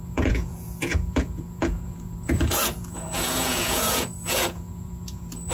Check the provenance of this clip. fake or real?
fake